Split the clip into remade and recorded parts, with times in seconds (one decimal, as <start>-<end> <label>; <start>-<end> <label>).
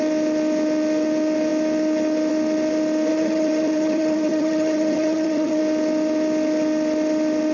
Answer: 0.0-3.1 recorded; 3.1-5.6 remade; 5.6-7.5 recorded